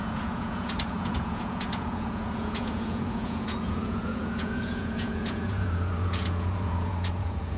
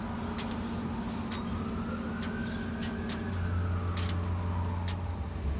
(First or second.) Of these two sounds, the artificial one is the first